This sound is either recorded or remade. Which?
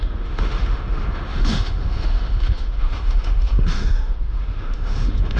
remade